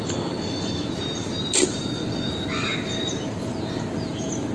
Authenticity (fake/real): real